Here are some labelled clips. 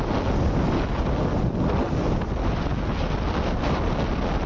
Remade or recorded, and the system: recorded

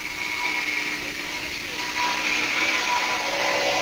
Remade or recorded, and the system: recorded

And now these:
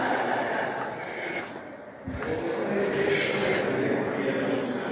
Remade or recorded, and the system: recorded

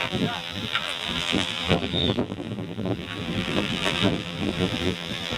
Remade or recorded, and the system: remade, vocoder, BigVGAN v2